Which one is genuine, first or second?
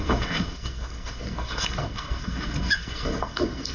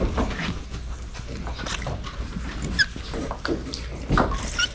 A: second